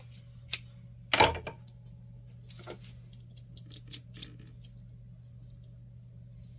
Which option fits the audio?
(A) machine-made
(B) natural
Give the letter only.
B